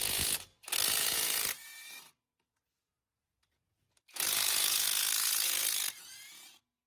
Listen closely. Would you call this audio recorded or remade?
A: remade